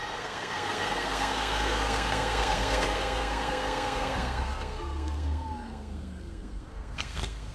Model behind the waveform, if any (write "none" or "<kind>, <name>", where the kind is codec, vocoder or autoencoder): codec, SNAC